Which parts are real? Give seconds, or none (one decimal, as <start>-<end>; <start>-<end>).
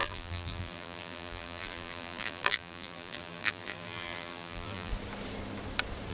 4.9-6.1